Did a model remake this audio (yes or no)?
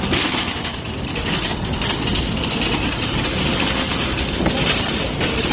no